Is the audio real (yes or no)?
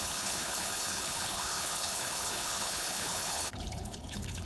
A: no